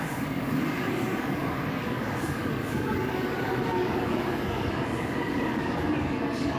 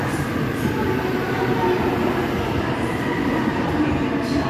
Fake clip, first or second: first